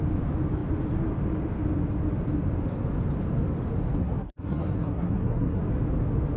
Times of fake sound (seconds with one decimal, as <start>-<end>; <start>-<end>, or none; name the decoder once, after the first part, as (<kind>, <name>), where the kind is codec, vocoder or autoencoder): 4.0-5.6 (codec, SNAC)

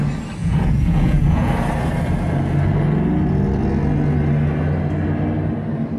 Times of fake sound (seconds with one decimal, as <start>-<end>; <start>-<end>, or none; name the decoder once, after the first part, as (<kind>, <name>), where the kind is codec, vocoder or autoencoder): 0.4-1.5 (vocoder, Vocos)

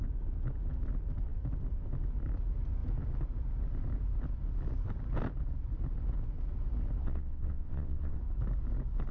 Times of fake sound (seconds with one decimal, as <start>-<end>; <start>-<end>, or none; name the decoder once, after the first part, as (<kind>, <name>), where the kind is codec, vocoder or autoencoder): 7.0-8.2 (vocoder, WaveNeXt)

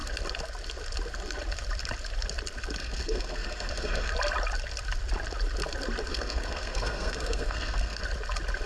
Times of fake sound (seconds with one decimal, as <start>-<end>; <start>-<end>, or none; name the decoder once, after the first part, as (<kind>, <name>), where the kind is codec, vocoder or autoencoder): 2.8-4.1 (codec, SNAC); 6.1-8.0

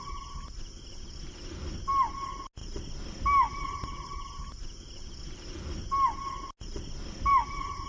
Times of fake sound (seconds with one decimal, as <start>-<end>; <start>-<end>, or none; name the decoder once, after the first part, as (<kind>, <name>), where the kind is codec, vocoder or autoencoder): none